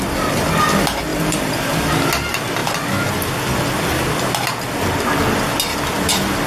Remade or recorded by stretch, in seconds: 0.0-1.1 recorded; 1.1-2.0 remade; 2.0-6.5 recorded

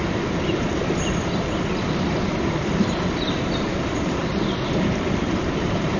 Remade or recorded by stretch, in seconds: 0.0-0.7 remade; 0.7-3.1 recorded; 3.1-4.2 remade; 4.2-5.2 recorded; 5.2-6.0 remade

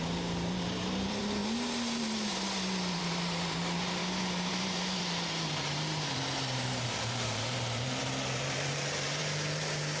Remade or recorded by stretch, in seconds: 0.0-4.0 remade; 4.0-4.5 recorded; 4.5-9.2 remade; 9.2-10.0 recorded

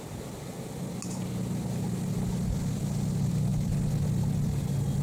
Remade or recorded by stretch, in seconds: 0.0-5.0 recorded

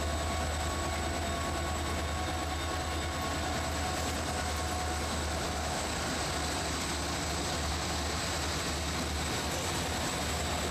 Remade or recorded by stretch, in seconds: 0.0-10.7 recorded

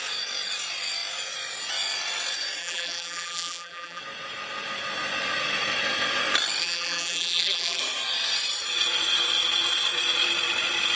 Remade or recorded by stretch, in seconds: 0.0-2.6 recorded; 2.6-4.0 remade; 4.0-6.6 recorded; 6.6-7.8 remade; 7.8-11.0 recorded

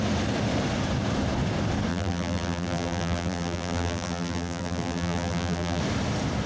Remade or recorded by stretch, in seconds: 0.0-1.9 recorded; 1.9-5.8 remade; 5.8-6.5 recorded